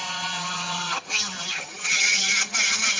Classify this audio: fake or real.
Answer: fake